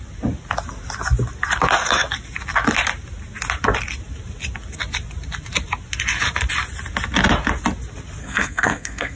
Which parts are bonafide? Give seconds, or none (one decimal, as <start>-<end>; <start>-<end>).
0.0-8.2